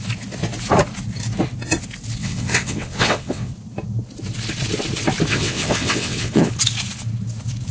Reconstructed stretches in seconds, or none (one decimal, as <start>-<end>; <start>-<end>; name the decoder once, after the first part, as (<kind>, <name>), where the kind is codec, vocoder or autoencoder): 2.2-3.5 (vocoder, WaveNeXt); 5.3-6.5